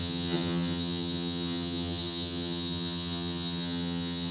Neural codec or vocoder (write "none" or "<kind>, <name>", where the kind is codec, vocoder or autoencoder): vocoder, HiFi-GAN